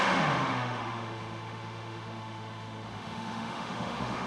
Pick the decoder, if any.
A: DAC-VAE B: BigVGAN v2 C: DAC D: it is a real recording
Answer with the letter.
A